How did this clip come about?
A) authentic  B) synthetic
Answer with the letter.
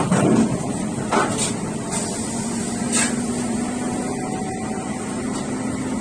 A